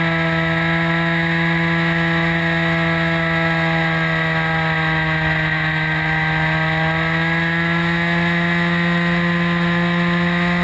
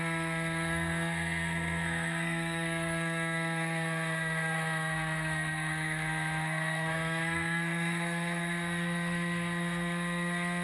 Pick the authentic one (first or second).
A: first